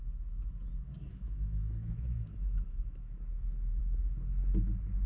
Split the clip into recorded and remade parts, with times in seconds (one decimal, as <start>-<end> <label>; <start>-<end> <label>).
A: 0.0-1.1 recorded; 1.1-3.8 remade; 3.8-5.1 recorded

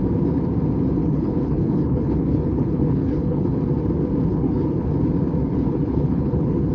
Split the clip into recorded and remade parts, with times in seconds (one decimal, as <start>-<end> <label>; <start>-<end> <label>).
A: 0.0-1.0 recorded; 1.0-3.6 remade; 3.6-4.3 recorded; 4.3-4.9 remade; 4.9-5.4 recorded; 5.4-6.7 remade

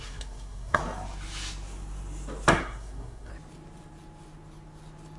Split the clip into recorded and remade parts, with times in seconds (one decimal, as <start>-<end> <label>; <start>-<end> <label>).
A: 0.0-0.8 remade; 0.8-2.5 recorded; 2.5-3.3 remade; 3.3-5.2 recorded

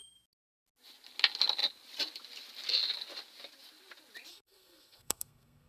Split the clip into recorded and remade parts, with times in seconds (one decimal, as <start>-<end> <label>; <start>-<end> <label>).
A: 0.0-4.3 recorded; 4.3-5.7 remade

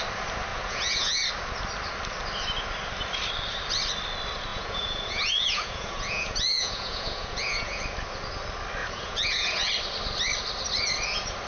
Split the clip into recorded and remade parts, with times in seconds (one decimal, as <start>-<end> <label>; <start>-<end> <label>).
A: 0.0-0.5 recorded; 0.5-1.3 remade; 1.3-4.5 recorded; 4.5-7.8 remade; 7.8-8.8 recorded; 8.8-9.7 remade; 9.7-11.5 recorded

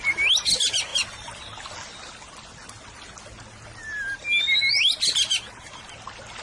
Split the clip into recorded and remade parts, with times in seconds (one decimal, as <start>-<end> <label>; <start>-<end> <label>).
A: 0.0-6.4 recorded

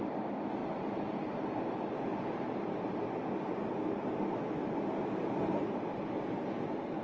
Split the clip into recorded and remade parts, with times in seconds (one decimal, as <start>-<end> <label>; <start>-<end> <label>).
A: 0.0-4.6 recorded; 4.6-6.3 remade; 6.3-7.0 recorded

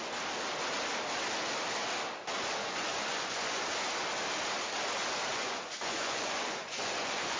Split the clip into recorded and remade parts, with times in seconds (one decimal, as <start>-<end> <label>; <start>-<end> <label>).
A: 0.0-2.6 recorded; 2.6-3.6 remade; 3.6-5.3 recorded; 5.3-7.4 remade